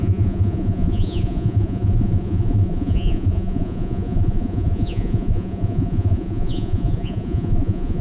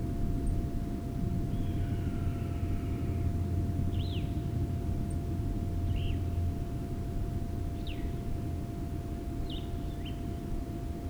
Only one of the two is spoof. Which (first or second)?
first